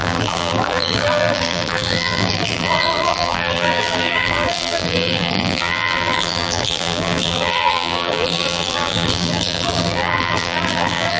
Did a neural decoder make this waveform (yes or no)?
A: yes